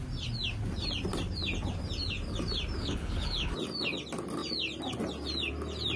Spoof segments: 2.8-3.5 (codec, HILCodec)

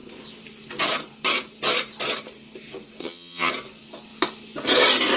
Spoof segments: 3.0-3.5 (vocoder, HiFi-GAN)